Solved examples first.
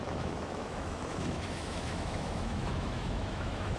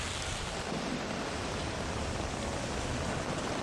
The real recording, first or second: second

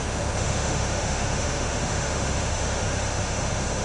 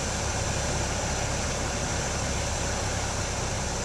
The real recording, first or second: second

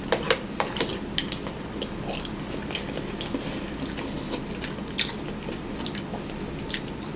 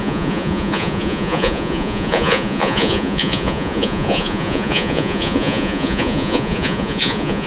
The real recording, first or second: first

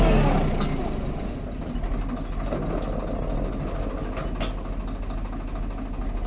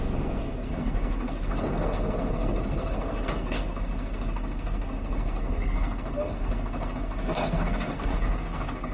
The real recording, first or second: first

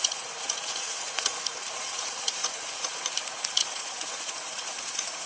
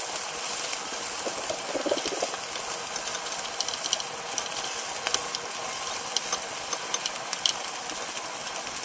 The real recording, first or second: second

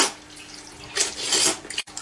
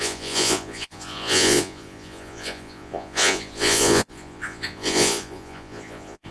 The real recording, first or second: first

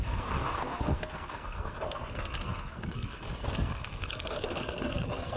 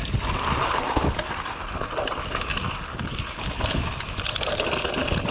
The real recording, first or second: second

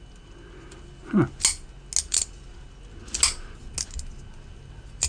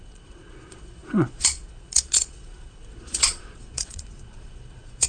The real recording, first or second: first